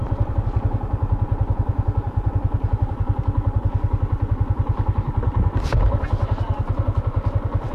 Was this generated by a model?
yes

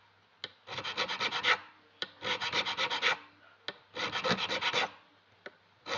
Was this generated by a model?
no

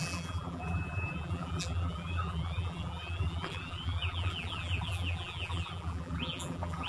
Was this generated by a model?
yes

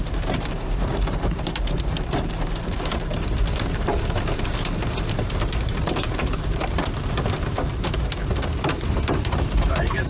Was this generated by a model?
yes